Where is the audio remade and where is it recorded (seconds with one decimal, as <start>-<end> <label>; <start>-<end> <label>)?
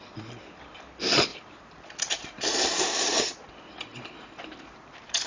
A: 0.0-1.3 recorded; 1.3-3.2 remade; 3.2-3.9 recorded; 3.9-5.3 remade